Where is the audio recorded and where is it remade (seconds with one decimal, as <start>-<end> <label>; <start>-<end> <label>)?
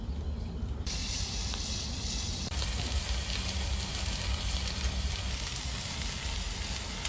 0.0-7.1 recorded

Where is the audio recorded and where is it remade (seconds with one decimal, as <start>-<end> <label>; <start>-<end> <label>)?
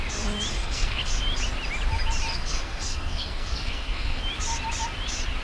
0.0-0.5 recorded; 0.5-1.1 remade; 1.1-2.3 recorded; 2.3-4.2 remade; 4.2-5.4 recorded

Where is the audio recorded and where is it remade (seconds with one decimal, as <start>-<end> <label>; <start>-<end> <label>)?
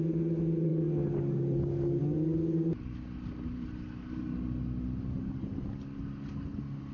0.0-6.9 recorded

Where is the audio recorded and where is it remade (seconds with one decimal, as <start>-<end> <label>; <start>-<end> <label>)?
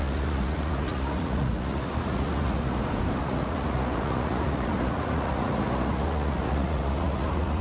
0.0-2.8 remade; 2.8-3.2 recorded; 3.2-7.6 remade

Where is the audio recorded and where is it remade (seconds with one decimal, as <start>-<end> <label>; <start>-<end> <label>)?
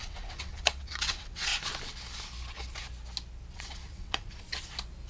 0.0-1.5 remade; 1.5-3.5 recorded; 3.5-4.3 remade; 4.3-5.1 recorded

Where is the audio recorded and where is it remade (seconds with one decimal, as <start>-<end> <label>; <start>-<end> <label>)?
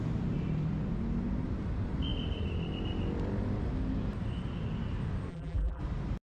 0.0-5.3 recorded; 5.3-5.8 remade; 5.8-6.2 recorded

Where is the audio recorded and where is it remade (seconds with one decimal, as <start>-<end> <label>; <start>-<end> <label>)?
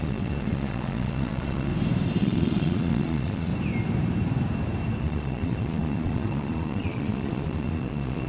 0.0-1.7 remade; 1.7-2.2 recorded; 2.2-3.5 remade; 3.5-5.0 recorded; 5.0-8.3 remade